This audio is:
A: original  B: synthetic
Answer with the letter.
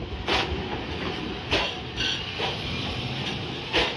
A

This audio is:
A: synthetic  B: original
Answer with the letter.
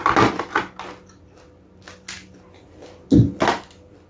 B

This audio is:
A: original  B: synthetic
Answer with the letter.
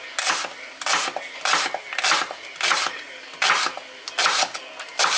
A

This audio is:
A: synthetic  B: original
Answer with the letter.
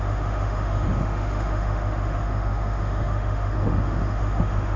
A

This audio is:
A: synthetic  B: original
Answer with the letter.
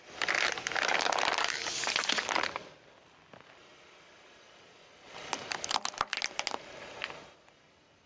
B